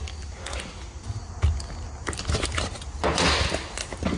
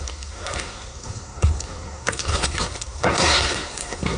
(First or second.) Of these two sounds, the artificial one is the second